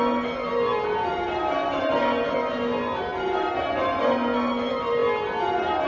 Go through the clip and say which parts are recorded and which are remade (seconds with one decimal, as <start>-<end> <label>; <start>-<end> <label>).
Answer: 0.0-5.9 recorded